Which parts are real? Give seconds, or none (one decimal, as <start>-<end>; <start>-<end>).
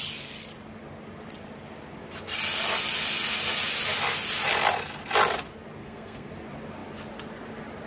0.0-5.8; 6.3-7.9